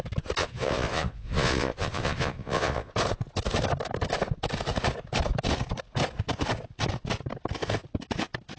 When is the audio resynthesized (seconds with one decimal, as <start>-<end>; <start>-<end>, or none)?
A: 0.4-2.9